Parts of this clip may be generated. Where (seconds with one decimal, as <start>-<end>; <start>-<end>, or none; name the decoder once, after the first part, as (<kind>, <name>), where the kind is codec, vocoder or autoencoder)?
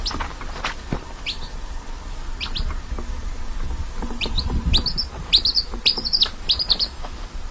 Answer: 4.2-7.5 (vocoder, BigVGAN v2)